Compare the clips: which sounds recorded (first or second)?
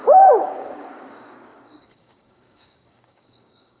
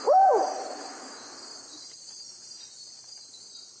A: second